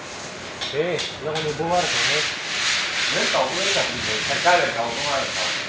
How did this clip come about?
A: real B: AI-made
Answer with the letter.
A